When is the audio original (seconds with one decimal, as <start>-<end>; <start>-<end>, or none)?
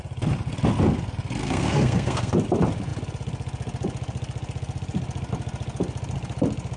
0.0-1.4; 2.3-6.8